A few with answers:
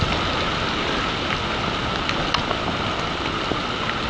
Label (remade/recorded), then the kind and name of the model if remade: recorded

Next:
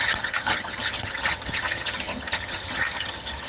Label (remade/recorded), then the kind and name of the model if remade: remade, vocoder, HiFi-GAN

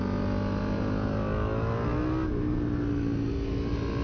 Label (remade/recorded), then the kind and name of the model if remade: recorded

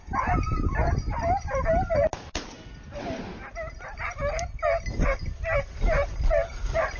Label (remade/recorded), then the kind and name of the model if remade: recorded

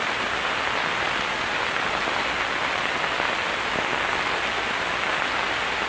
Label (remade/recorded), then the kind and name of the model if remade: recorded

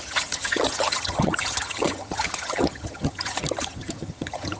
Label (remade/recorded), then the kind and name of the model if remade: remade, vocoder, HiFi-GAN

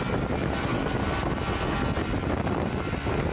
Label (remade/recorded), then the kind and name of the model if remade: recorded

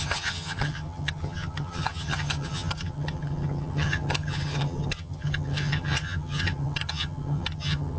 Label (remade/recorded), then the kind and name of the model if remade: remade, vocoder, HiFi-GAN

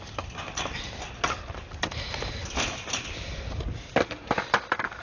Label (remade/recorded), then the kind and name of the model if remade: recorded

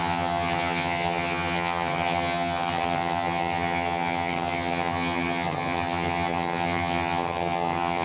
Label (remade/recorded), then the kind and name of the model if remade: remade, vocoder, HiFi-GAN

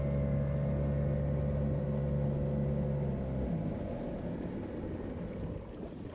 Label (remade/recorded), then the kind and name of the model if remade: recorded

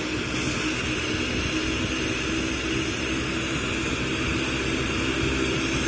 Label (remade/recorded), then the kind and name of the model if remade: recorded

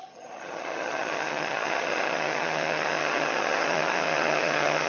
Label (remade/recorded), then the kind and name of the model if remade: remade, vocoder, HiFi-GAN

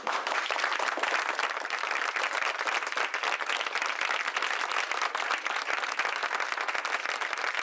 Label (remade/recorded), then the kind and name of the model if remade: recorded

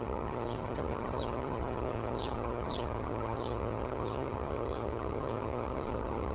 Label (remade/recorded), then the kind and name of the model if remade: remade, vocoder, HiFi-GAN